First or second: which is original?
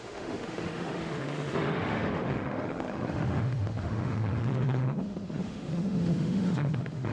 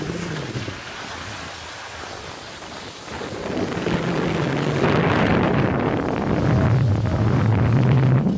second